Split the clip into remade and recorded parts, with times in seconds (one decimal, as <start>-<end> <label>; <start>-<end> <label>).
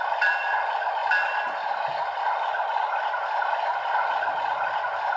0.0-5.2 recorded